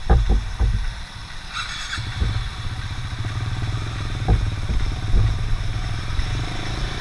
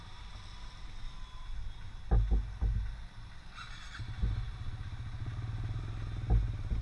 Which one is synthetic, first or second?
first